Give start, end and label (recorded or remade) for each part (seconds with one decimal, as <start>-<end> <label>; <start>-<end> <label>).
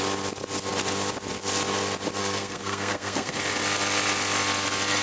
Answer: 0.0-2.2 recorded; 2.2-3.4 remade; 3.4-5.0 recorded